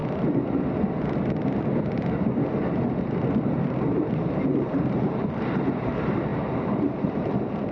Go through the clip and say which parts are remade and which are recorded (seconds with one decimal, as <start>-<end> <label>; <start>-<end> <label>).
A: 0.0-4.1 recorded; 4.1-7.7 remade